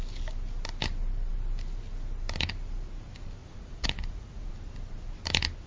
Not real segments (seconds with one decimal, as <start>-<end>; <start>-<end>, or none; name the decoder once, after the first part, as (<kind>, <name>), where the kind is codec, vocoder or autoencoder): 3.4-4.5 (vocoder, Vocos)